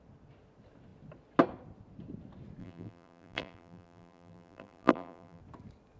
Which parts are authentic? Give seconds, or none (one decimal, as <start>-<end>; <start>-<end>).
0.0-2.6; 5.4-6.0